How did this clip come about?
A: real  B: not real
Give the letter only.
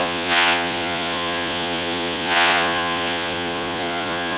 B